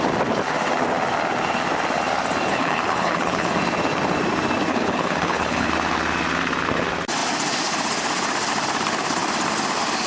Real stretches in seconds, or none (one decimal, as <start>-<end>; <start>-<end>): 0.0-2.5; 3.5-4.7; 5.7-10.1